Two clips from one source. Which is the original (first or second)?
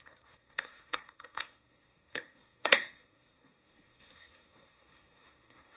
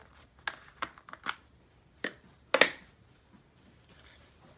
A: second